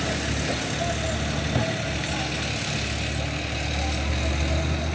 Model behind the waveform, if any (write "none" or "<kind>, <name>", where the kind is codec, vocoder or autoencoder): none